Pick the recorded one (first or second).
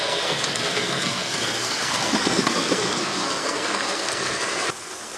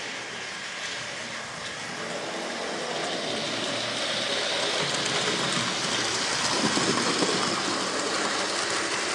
second